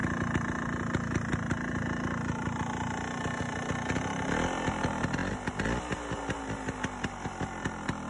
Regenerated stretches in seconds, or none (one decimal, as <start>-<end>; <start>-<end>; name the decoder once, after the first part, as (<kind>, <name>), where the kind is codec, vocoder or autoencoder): none

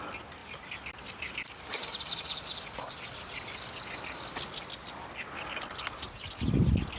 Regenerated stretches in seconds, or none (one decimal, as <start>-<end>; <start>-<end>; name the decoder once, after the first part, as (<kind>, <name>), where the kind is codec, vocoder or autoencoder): none

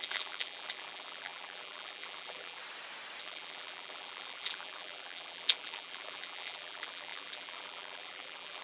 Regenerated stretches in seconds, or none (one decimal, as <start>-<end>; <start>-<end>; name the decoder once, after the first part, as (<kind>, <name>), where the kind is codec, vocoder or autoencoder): 0.0-2.6 (vocoder, BigVGAN v2); 3.2-8.6

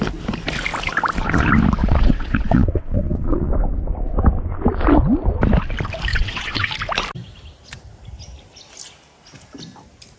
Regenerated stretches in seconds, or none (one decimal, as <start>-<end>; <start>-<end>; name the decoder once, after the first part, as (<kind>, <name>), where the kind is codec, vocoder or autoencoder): 1.8-3.5 (vocoder, WaveNeXt); 6.1-6.7

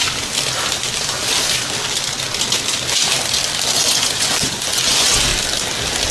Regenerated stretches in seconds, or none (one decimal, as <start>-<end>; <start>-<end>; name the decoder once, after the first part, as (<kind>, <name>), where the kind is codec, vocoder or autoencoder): 3.7-5.3 (vocoder, Vocos)

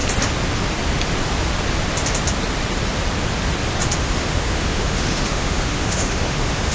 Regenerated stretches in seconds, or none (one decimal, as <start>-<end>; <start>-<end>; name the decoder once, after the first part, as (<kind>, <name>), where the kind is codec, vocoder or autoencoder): 4.0-6.7 (autoencoder, DAC-VAE)